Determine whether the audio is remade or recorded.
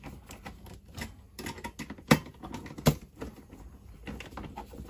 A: recorded